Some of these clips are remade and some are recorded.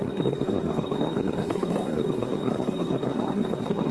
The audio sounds remade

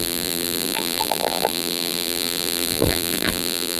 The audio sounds remade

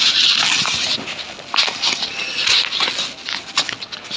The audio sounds recorded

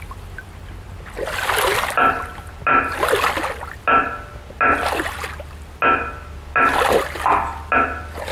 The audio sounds recorded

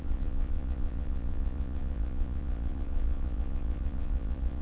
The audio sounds remade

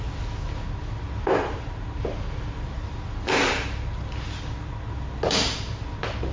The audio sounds recorded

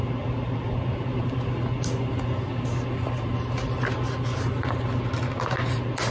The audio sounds recorded